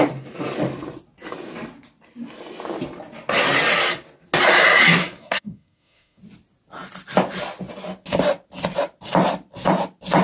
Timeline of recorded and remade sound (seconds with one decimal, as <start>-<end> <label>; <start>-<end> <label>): 0.0-5.0 recorded; 5.0-6.2 remade; 6.2-10.2 recorded